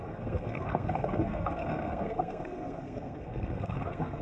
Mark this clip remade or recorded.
remade